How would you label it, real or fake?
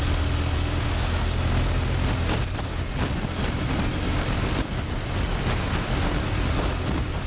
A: real